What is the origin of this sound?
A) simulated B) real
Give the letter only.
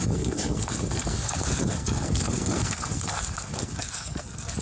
A